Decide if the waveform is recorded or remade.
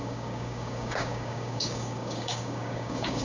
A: remade